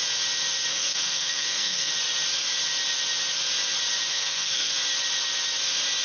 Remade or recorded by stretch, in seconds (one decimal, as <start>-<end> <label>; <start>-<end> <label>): 0.0-0.7 recorded; 0.7-1.9 remade; 1.9-4.1 recorded; 4.1-4.7 remade; 4.7-6.0 recorded